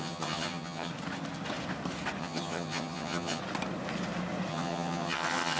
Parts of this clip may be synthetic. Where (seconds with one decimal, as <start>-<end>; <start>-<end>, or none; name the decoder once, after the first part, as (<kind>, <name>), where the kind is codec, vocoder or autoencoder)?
0.0-0.9 (vocoder, HiFi-GAN); 2.2-3.4; 4.5-5.6